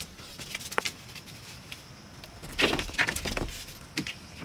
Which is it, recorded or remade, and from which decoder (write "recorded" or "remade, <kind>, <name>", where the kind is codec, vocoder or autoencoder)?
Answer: recorded